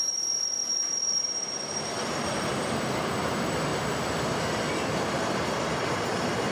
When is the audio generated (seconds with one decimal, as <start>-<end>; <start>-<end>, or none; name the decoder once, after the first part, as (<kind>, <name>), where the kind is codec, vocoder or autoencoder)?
0.0-3.7 (vocoder, BigVGAN v2); 5.3-6.5